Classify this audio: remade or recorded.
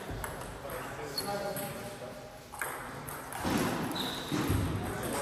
recorded